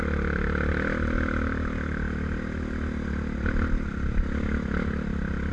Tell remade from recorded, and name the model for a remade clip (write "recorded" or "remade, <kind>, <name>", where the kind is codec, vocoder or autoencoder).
recorded